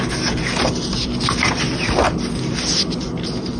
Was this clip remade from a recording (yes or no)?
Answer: no